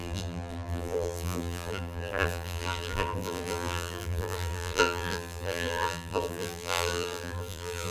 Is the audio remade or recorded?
remade